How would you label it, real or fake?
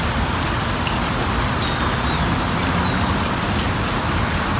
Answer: real